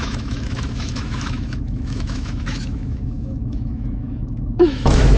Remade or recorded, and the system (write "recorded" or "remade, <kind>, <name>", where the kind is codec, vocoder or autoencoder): remade, autoencoder, DAC-VAE